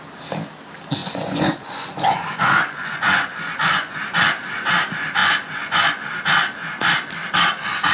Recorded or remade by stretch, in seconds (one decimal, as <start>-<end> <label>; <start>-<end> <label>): 0.0-1.0 recorded; 1.0-4.0 remade; 4.0-5.2 recorded; 5.2-6.0 remade; 6.0-7.9 recorded